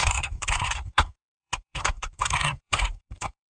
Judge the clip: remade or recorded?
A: remade